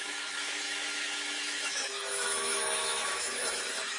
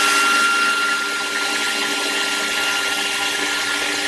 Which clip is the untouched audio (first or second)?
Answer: second